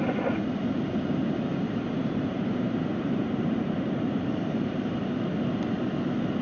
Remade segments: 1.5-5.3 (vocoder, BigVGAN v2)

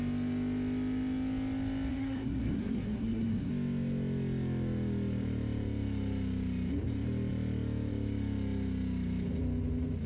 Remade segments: 1.9-3.5 (codec, SNAC)

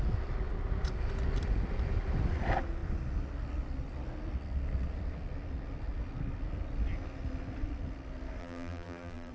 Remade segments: 8.4-9.3 (vocoder, BigVGAN v2)

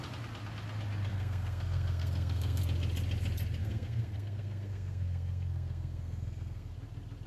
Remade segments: 1.1-2.6 (codec, SNAC); 3.6-6.7

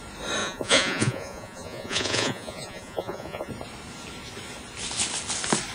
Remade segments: 0.4-3.5 (vocoder, Vocos)

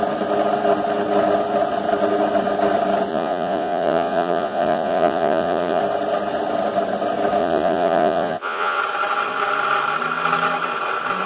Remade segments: 3.1-5.8 (vocoder, Vocos); 7.4-8.8